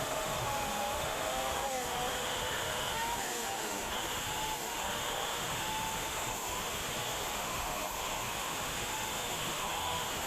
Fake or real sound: fake